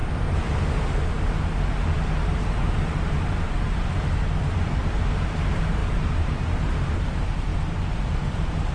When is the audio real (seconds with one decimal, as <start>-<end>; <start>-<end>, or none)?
none